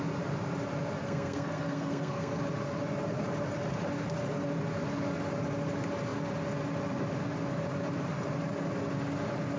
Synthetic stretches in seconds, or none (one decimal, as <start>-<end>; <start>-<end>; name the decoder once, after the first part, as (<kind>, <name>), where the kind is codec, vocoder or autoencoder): 1.0-2.4 (codec, SNAC)